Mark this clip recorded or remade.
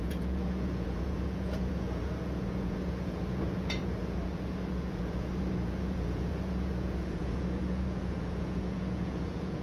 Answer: remade